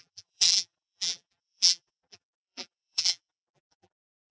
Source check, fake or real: fake